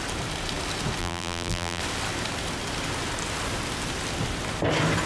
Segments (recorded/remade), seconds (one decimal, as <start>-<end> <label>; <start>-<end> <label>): 0.0-1.0 recorded; 1.0-1.8 remade; 1.8-5.1 recorded